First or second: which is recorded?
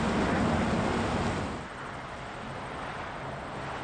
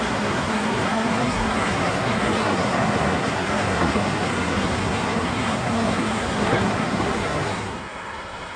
first